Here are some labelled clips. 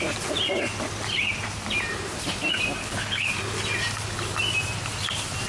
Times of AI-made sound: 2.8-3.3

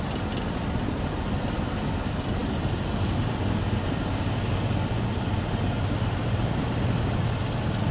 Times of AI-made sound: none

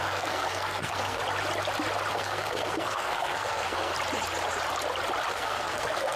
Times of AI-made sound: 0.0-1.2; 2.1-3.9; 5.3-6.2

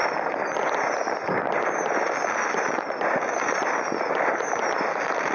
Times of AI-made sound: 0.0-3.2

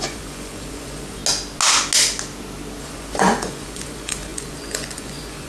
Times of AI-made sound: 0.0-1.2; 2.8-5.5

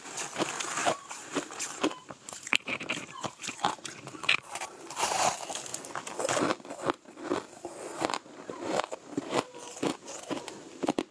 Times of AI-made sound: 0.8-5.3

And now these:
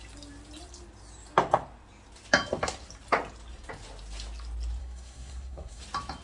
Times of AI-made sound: 4.8-5.8

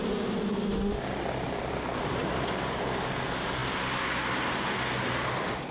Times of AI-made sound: none